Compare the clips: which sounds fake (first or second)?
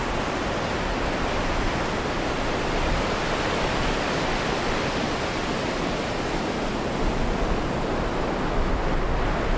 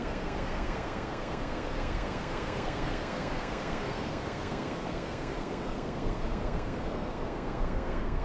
second